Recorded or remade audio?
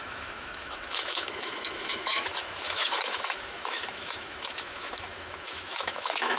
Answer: remade